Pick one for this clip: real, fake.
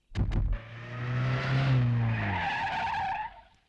real